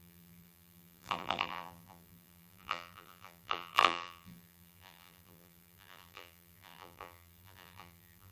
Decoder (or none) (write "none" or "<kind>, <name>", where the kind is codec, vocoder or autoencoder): vocoder, BigVGAN v2